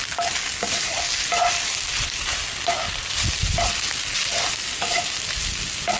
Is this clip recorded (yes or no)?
yes